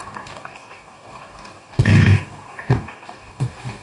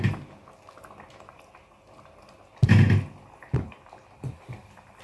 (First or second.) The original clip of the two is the second